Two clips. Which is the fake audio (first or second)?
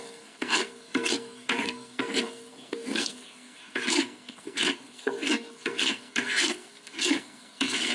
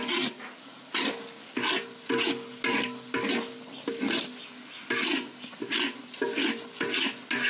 first